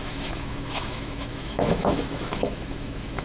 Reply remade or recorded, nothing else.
remade